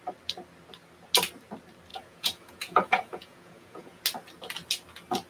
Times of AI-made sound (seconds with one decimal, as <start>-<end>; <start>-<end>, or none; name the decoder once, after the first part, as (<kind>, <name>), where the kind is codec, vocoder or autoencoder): 1.9-4.0 (vocoder, Vocos)